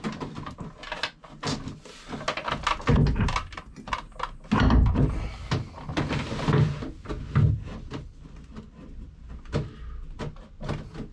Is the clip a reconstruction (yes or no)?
no